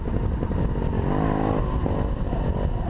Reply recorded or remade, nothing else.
recorded